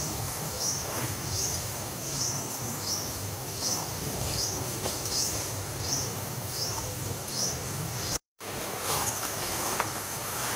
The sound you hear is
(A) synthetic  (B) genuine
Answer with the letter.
A